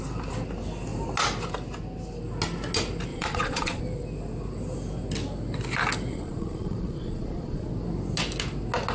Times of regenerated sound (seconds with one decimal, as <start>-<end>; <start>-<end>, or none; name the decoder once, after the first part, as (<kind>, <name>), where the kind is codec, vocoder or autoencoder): 3.1-3.8 (vocoder, Vocos); 6.1-7.7

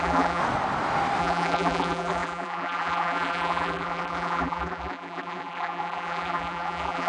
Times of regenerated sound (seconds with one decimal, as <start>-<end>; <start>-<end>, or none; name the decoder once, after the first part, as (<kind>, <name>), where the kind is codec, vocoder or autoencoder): 0.0-0.4 (vocoder, BigVGAN v2); 1.2-7.1

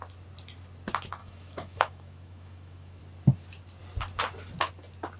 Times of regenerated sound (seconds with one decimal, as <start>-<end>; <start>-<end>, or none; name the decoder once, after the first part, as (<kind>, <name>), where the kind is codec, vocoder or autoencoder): 1.2-3.0 (autoencoder, DAC-VAE)

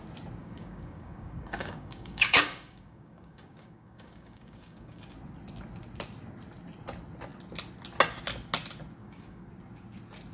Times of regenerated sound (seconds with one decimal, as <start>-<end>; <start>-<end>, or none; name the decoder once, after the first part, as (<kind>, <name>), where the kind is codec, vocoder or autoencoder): 0.4-5.0 (codec, DAC); 9.0-9.5

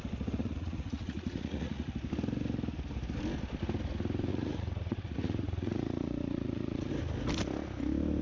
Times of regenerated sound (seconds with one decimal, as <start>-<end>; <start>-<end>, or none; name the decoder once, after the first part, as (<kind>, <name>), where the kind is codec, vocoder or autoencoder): 0.4-1.9 (vocoder, Vocos); 4.3-6.9